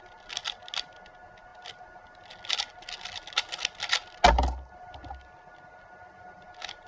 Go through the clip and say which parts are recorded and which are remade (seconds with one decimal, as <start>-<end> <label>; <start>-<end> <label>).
0.0-6.9 recorded